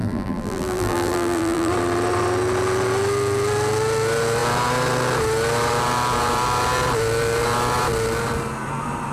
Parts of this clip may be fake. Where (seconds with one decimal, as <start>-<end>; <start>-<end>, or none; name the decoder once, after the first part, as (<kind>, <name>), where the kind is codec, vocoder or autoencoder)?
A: 0.0-1.7 (vocoder, BigVGAN v2)